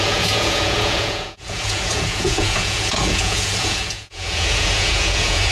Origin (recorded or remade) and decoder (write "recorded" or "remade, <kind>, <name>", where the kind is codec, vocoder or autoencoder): remade, vocoder, Vocos